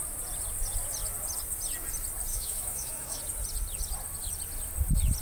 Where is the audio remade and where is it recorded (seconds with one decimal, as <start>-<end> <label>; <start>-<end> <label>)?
0.0-2.3 recorded; 2.3-3.2 remade; 3.2-5.2 recorded